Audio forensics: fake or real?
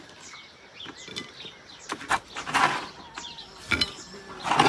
real